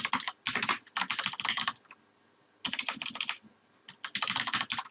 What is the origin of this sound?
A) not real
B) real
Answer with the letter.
B